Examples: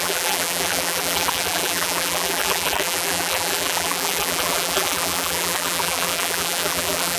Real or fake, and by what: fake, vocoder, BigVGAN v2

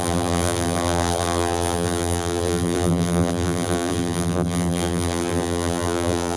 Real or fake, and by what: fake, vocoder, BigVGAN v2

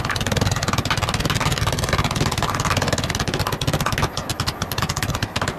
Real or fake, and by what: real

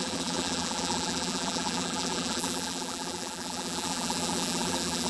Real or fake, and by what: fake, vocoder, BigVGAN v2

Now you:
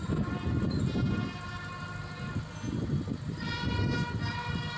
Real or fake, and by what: real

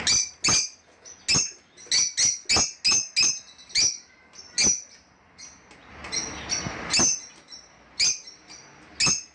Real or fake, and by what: real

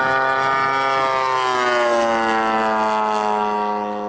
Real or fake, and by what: real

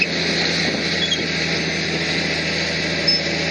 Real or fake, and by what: real